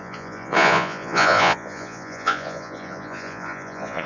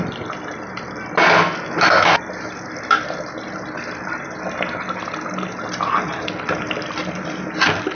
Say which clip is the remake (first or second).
first